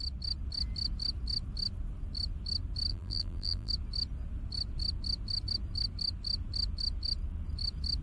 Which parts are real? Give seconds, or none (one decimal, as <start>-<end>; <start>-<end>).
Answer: 0.0-2.9; 3.7-8.0